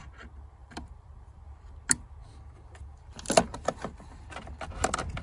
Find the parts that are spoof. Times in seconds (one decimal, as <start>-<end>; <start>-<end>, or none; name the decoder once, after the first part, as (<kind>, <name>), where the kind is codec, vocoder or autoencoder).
0.6-1.4 (vocoder, BigVGAN v2)